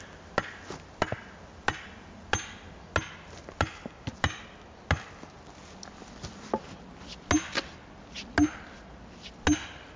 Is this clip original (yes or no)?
yes